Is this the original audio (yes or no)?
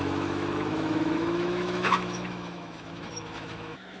no